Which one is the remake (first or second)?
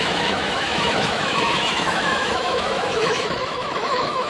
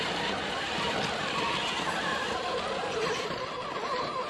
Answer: first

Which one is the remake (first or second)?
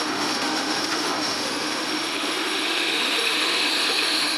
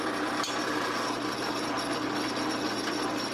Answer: first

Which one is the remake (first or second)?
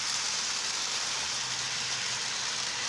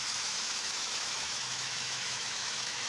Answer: second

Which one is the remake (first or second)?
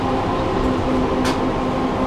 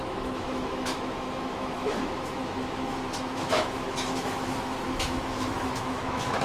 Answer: second